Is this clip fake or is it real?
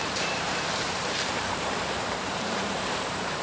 fake